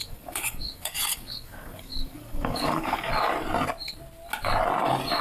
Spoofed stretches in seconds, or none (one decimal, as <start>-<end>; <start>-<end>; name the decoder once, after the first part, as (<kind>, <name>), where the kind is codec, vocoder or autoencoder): 0.0-3.1 (codec, DAC)